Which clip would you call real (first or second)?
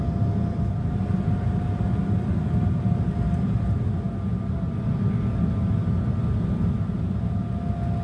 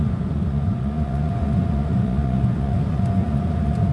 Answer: first